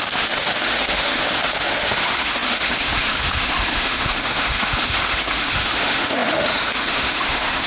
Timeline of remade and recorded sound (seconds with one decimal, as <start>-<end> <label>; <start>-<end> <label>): 0.0-7.7 remade